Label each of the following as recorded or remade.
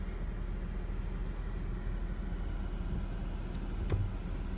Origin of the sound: recorded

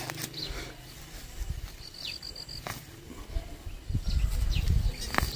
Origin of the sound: recorded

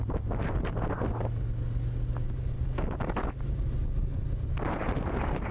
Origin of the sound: recorded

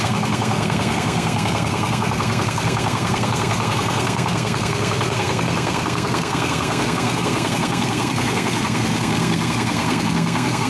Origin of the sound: remade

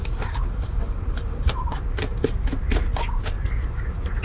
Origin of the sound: recorded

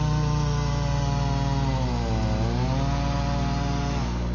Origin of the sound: recorded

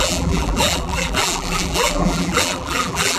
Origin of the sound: remade